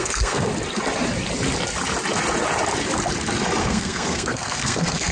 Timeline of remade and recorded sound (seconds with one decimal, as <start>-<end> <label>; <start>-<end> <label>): 0.0-0.5 remade; 0.5-3.6 recorded; 3.6-5.1 remade